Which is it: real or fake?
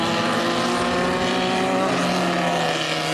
real